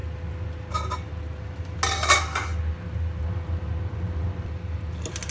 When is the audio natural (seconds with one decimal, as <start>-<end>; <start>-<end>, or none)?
0.0-5.3